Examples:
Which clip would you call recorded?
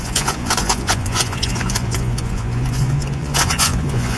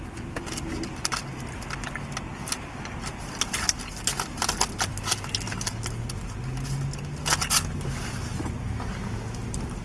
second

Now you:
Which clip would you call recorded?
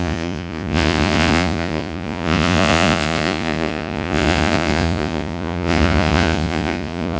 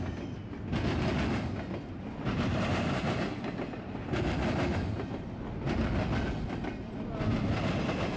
second